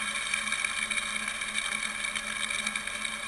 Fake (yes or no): no